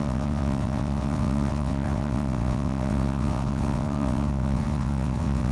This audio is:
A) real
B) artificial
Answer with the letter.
B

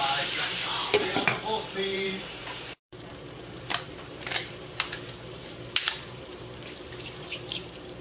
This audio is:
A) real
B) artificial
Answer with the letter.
B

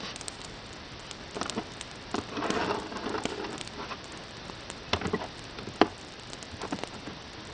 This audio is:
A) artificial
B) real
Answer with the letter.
B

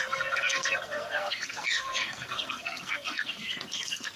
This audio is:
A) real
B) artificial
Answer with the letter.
B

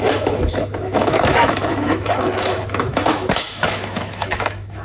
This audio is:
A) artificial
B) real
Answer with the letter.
A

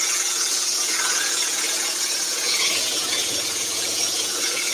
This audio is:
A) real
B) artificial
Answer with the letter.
B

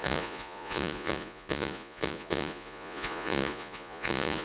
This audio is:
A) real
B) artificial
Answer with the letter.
B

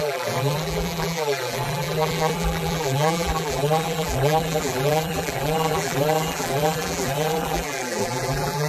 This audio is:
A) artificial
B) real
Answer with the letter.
A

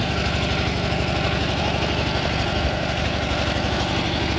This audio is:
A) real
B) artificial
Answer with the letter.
A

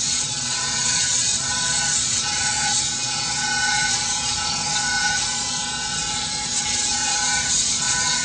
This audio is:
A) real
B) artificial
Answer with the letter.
B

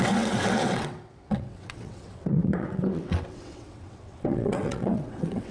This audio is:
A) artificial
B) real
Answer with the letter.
A